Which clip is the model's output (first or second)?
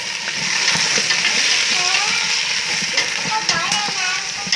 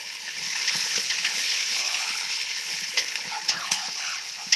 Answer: second